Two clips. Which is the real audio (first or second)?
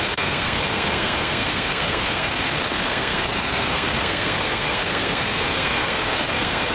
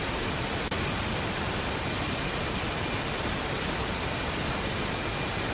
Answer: second